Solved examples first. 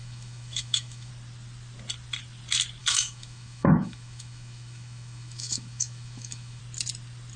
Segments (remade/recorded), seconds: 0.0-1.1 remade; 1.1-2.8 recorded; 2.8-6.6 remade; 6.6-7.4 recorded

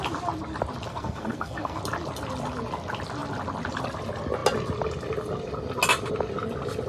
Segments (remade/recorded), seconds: 0.0-0.9 recorded; 0.9-1.8 remade; 1.8-6.9 recorded

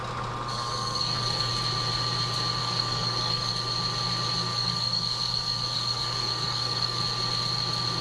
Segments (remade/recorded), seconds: 0.0-0.5 recorded; 0.5-1.5 remade; 1.5-2.6 recorded; 2.6-3.5 remade; 3.5-4.5 recorded; 4.5-7.0 remade; 7.0-8.0 recorded

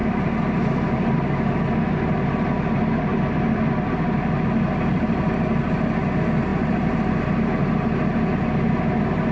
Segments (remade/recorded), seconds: 0.0-3.1 recorded; 3.1-5.7 remade; 5.7-6.5 recorded; 6.5-7.1 remade; 7.1-9.3 recorded

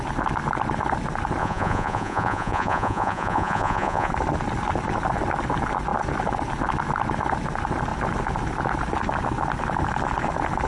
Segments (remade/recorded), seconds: 0.0-1.4 recorded; 1.4-4.1 remade; 4.1-10.7 recorded

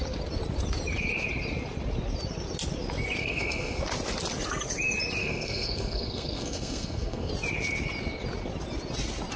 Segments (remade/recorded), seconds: 0.0-3.2 recorded; 3.2-3.8 remade; 3.8-5.2 recorded; 5.2-7.3 remade; 7.3-9.4 recorded

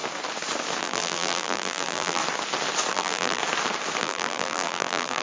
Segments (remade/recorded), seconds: 0.0-0.8 recorded; 0.8-2.2 remade; 2.2-2.9 recorded; 2.9-3.4 remade; 3.4-4.0 recorded; 4.0-5.2 remade

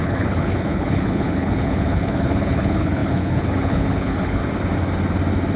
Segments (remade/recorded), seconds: 0.0-4.4 remade; 4.4-5.6 recorded